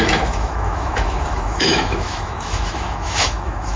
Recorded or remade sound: remade